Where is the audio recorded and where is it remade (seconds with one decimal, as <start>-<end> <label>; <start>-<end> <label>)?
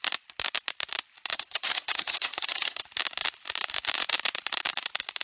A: 0.0-1.3 recorded; 1.3-2.8 remade; 2.8-5.2 recorded